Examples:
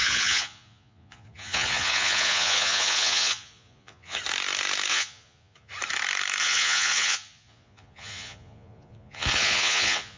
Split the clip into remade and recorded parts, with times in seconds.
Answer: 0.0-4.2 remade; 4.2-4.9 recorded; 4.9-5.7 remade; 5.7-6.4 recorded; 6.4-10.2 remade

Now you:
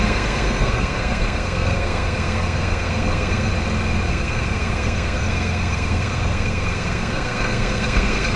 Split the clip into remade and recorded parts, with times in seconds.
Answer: 0.0-3.5 remade; 3.5-4.1 recorded; 4.1-8.4 remade

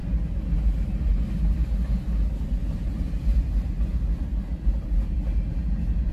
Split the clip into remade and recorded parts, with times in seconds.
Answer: 0.0-6.1 recorded

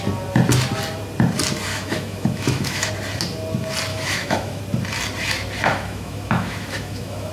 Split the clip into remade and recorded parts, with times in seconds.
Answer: 0.0-1.7 recorded; 1.7-2.9 remade; 2.9-3.9 recorded; 3.9-4.6 remade; 4.6-5.7 recorded; 5.7-7.3 remade

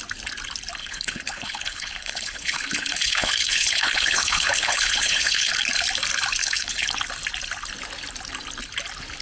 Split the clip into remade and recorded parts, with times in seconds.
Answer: 0.0-0.8 recorded; 0.8-5.5 remade; 5.5-6.4 recorded; 6.4-6.9 remade; 6.9-9.2 recorded

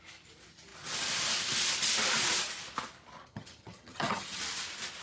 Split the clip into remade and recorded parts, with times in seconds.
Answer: 0.0-3.3 recorded; 3.3-4.4 remade; 4.4-5.0 recorded

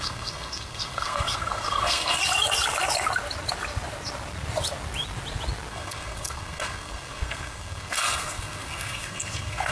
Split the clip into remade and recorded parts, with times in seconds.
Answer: 0.0-2.2 remade; 2.2-5.7 recorded; 5.7-9.7 remade

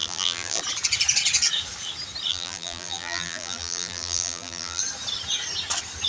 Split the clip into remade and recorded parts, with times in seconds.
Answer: 0.0-0.6 remade; 0.6-2.3 recorded; 2.3-4.8 remade; 4.8-6.1 recorded